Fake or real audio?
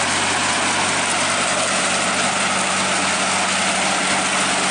real